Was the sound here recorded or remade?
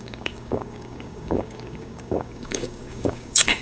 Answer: remade